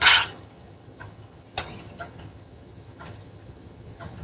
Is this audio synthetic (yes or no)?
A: yes